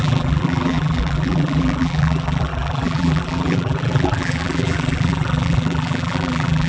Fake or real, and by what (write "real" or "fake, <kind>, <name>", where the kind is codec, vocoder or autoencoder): fake, vocoder, BigVGAN v2